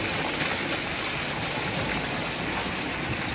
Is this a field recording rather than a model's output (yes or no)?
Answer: yes